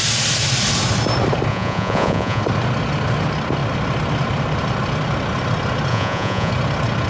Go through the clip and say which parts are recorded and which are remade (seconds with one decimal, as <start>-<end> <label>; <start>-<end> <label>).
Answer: 0.0-1.5 recorded; 1.5-2.4 remade; 2.4-5.9 recorded; 5.9-6.5 remade; 6.5-7.1 recorded